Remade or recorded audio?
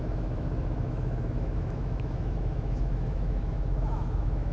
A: remade